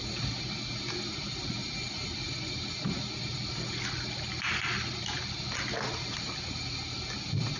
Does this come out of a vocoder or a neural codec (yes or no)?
no